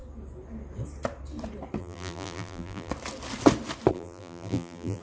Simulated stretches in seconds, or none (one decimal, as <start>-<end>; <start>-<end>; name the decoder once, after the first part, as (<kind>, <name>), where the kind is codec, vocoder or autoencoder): 1.8-2.9 (vocoder, BigVGAN v2); 3.9-5.0